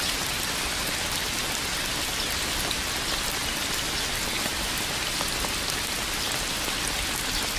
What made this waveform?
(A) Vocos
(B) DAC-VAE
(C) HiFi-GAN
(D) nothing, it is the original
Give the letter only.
D